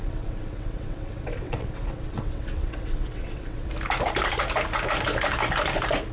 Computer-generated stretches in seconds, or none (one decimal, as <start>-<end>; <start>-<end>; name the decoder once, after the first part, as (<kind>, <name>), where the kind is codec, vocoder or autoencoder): 0.0-3.7 (vocoder, WaveNeXt)